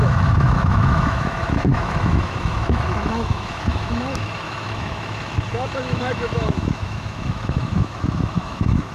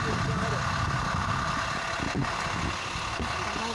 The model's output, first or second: first